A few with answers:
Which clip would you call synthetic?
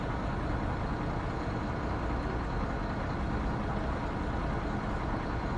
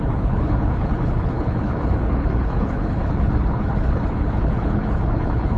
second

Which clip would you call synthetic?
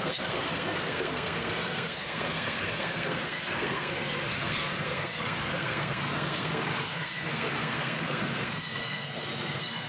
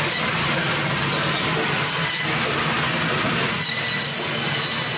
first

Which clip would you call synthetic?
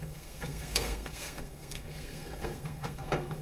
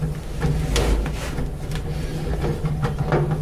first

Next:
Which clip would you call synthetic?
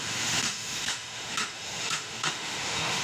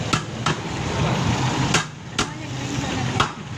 first